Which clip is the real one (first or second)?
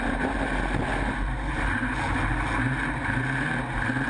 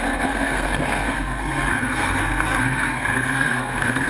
first